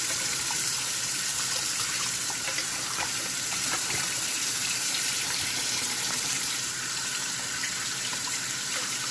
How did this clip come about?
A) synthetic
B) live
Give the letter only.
A